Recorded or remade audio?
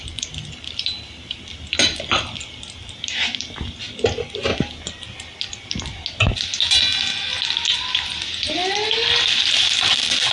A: recorded